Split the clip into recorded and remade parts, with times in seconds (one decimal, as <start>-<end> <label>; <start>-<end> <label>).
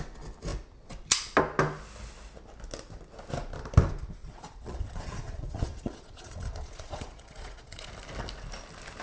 0.0-4.2 recorded; 4.2-7.9 remade; 7.9-9.0 recorded